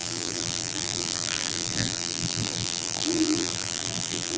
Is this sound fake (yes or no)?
yes